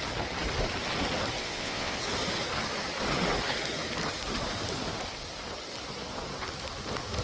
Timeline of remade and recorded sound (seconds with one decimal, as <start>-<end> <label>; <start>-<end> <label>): 0.0-1.4 recorded; 1.4-2.0 remade; 2.0-7.2 recorded